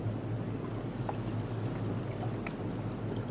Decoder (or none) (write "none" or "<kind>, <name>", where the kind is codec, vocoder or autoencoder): none